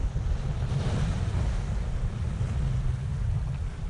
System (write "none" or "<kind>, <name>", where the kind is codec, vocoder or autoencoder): none